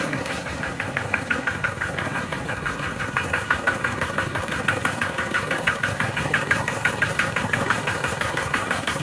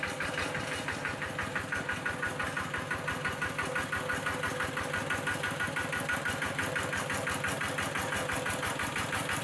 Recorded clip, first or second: second